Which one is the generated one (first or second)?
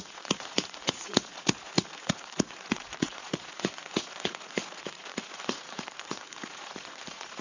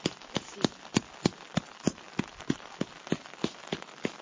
first